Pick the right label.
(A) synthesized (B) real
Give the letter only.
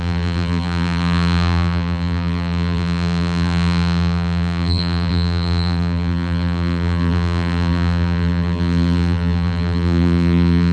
A